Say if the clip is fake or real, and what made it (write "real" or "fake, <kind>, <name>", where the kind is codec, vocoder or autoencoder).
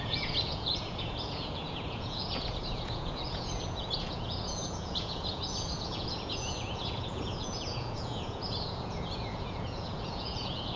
fake, vocoder, Vocos